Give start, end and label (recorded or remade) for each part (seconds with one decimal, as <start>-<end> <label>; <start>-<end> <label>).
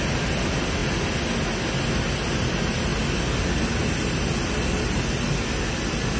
0.0-6.2 recorded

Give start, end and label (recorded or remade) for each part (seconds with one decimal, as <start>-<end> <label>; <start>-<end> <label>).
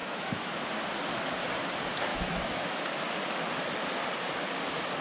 0.0-0.5 remade; 0.5-2.1 recorded; 2.1-2.9 remade; 2.9-5.0 recorded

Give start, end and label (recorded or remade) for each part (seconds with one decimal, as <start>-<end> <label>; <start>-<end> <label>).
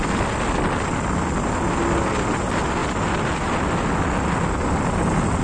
0.0-5.4 recorded